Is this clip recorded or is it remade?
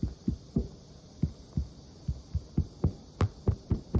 remade